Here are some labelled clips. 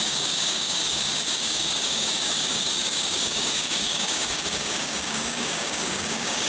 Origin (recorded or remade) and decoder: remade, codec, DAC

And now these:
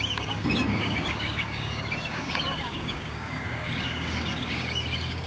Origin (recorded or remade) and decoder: remade, codec, DAC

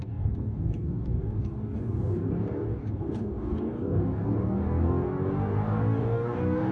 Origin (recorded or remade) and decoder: remade, codec, DAC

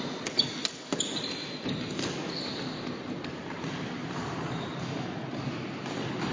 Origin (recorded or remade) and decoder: recorded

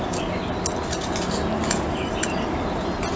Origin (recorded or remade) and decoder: recorded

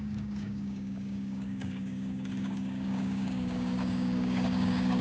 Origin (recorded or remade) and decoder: remade, codec, DAC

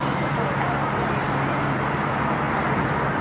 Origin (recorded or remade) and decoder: recorded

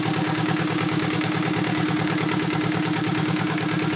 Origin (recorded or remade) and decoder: remade, codec, DAC